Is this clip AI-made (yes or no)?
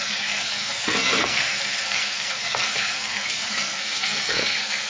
yes